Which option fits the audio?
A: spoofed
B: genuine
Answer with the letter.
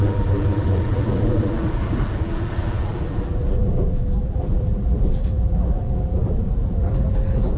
A